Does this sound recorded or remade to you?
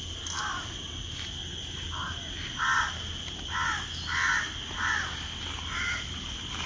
recorded